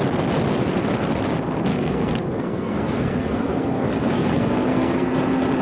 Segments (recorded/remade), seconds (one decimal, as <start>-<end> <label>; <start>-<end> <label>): 0.0-1.7 recorded; 1.7-5.1 remade; 5.1-5.6 recorded